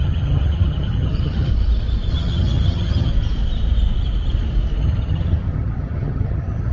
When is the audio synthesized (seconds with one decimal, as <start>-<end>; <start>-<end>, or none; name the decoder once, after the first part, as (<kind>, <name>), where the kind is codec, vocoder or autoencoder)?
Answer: 0.0-1.5 (vocoder, HiFi-GAN); 2.1-3.1; 4.8-6.7